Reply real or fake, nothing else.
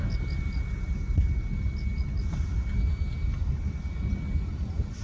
real